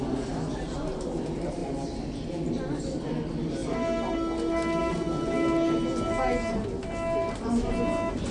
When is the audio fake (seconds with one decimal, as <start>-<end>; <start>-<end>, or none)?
none